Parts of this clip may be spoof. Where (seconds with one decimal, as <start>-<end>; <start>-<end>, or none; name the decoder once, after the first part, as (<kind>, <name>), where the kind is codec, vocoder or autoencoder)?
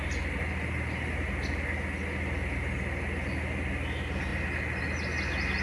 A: none